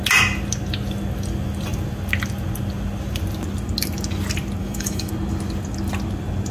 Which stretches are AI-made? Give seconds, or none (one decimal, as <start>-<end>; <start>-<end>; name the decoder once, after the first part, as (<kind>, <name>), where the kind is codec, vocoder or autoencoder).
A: 4.6-5.1 (autoencoder, DAC-VAE)